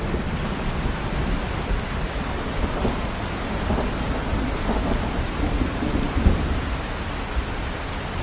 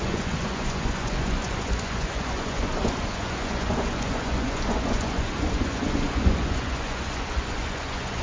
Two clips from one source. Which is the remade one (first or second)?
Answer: second